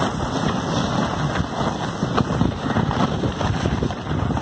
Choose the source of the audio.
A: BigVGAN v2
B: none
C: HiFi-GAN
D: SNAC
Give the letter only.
B